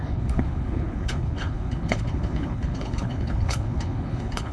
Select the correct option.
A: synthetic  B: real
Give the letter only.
A